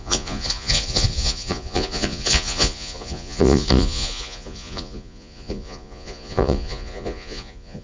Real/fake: fake